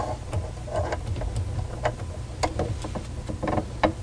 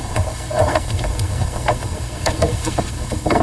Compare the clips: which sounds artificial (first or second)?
second